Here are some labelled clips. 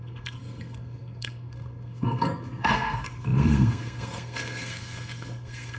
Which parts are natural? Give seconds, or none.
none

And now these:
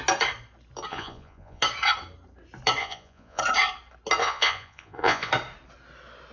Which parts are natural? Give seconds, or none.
0.0-0.9; 1.6-2.8; 3.4-4.2; 5.3-6.3